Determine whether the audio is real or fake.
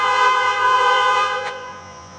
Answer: fake